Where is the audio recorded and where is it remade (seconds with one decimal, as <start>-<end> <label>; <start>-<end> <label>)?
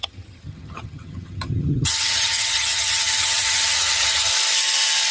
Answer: 0.0-4.3 remade; 4.3-5.1 recorded